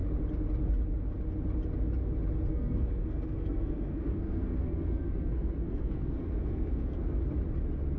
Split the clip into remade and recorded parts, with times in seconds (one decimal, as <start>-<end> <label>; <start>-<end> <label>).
0.0-2.5 recorded; 2.5-7.3 remade; 7.3-8.0 recorded